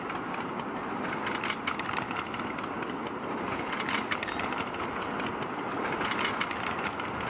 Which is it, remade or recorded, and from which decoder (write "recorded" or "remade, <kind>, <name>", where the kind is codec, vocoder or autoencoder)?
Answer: recorded